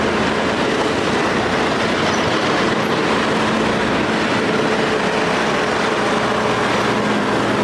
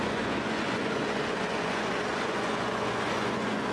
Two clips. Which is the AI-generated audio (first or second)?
second